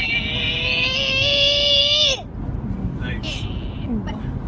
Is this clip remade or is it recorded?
recorded